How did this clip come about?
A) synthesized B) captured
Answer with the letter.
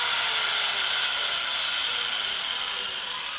B